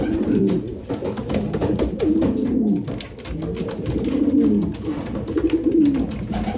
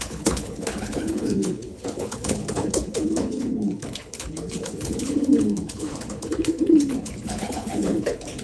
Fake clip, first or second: second